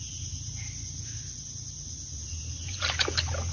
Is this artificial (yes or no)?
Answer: no